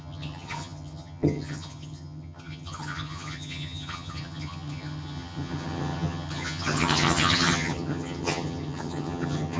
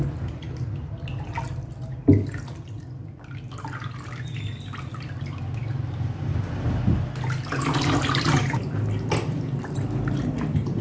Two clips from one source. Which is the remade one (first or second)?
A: first